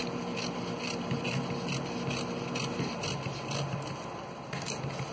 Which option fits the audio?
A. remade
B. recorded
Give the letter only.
B